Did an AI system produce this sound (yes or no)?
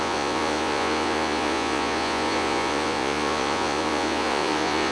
yes